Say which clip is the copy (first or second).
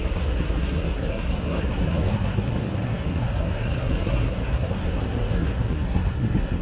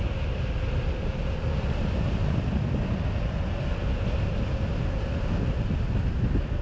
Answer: first